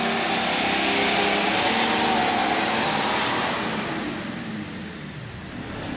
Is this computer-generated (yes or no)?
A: no